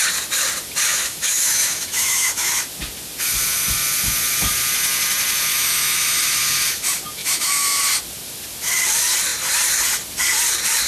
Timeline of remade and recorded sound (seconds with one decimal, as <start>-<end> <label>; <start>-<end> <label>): 0.0-0.9 recorded; 0.9-2.5 remade; 2.5-5.5 recorded; 5.5-6.4 remade; 6.4-7.2 recorded; 7.2-7.8 remade; 7.8-10.9 recorded